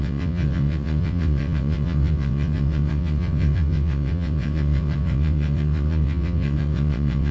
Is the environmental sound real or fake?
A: fake